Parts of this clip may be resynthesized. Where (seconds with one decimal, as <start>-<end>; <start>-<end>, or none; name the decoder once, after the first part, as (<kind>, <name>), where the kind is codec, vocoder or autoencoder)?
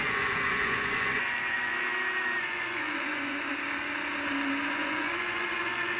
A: 0.0-1.9 (vocoder, Vocos); 2.4-3.5; 4.7-6.0